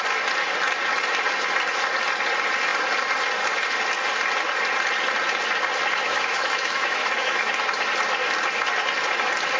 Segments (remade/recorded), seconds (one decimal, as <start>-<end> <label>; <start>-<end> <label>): 0.0-6.0 recorded; 6.0-7.5 remade; 7.5-9.6 recorded